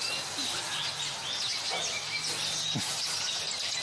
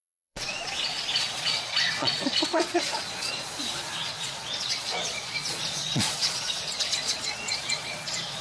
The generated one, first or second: second